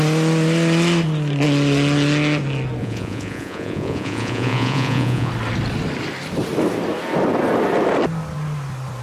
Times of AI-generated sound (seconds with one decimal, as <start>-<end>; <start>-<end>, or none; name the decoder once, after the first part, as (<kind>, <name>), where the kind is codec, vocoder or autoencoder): 2.8-5.3 (vocoder, Vocos)